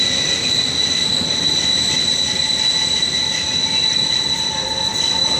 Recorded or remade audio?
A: recorded